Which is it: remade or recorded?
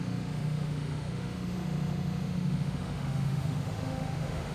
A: remade